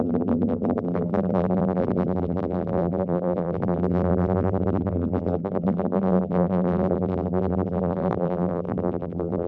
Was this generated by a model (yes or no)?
yes